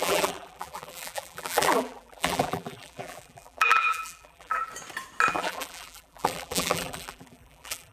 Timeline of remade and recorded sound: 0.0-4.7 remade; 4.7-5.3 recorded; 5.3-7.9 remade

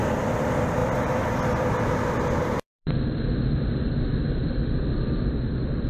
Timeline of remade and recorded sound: 0.0-5.9 remade

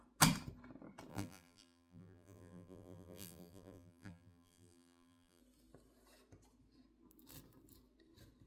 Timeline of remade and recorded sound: 0.0-1.1 recorded; 1.1-5.4 remade; 5.4-8.5 recorded

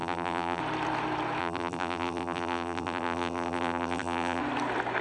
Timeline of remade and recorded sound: 0.0-0.6 remade; 0.6-1.4 recorded; 1.4-4.4 remade; 4.4-5.0 recorded

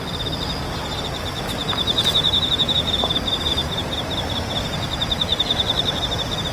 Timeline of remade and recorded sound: 0.0-1.6 recorded; 1.6-3.1 remade; 3.1-3.6 recorded; 3.6-4.5 remade; 4.5-6.5 recorded